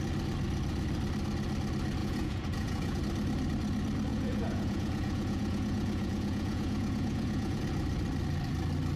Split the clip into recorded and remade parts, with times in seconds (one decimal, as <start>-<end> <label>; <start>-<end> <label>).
0.0-2.0 recorded; 2.0-3.0 remade; 3.0-4.1 recorded; 4.1-7.6 remade; 7.6-9.0 recorded